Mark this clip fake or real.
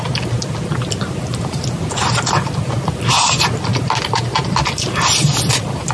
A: real